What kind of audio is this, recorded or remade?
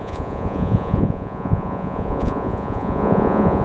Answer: remade